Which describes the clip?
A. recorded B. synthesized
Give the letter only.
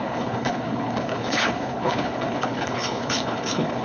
B